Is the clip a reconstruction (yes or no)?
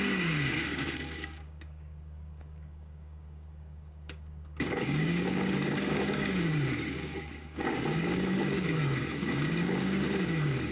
yes